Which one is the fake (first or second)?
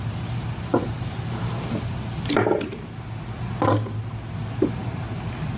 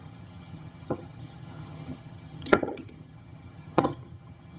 second